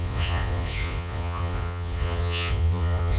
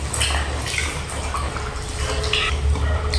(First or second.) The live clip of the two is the second